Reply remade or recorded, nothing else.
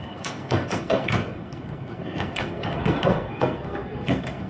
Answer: remade